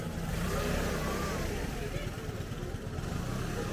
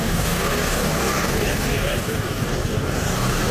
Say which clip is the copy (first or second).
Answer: second